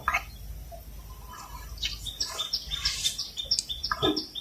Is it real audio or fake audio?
real